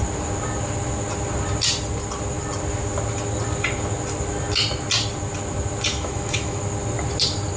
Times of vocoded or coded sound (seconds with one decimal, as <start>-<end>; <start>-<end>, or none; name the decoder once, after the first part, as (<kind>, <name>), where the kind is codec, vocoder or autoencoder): 5.9-6.6 (autoencoder, DAC-VAE)